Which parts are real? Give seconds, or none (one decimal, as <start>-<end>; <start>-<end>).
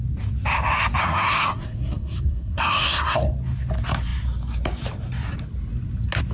0.0-1.0; 3.3-6.3